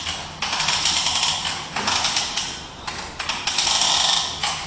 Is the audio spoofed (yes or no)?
no